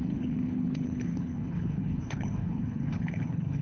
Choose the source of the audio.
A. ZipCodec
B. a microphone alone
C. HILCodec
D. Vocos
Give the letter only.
C